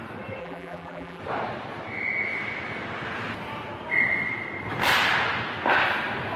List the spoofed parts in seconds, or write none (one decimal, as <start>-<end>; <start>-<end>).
0.4-1.2

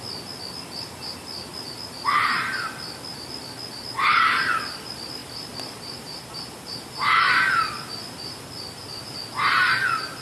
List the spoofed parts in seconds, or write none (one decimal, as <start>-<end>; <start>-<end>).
5.2-6.2

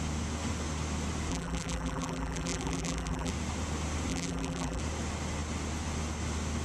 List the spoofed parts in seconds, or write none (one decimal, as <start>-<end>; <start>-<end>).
1.3-3.3; 4.1-4.8

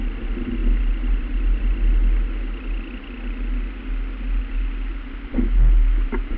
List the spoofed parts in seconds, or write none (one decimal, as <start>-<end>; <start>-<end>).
none

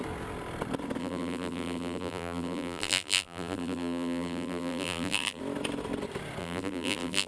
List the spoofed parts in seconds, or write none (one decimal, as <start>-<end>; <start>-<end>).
1.0-5.4; 6.4-7.3

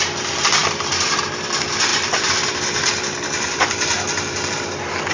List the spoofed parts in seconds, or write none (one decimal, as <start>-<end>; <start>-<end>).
0.0-5.1

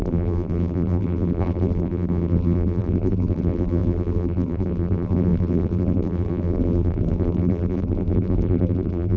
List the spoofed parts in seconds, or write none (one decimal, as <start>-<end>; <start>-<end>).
0.0-9.2

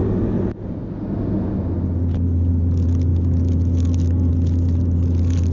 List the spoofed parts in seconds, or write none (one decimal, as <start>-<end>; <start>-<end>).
none